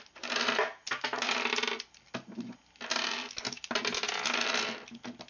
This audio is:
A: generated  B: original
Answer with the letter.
B